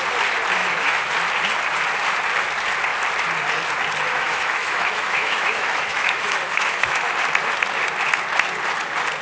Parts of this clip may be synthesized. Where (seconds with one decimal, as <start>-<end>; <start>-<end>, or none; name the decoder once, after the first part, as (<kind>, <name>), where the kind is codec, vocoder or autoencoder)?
0.6-1.1 (autoencoder, DAC-VAE); 4.1-7.1